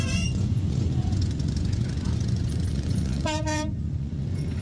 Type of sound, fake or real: fake